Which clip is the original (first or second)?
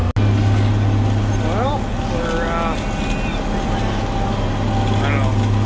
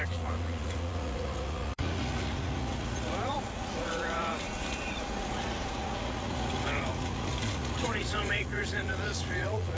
first